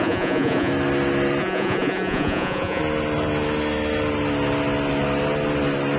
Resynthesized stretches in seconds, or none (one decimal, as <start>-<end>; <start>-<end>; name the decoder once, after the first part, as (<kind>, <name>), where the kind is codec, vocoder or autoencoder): 0.0-0.7 (vocoder, Vocos); 1.4-2.8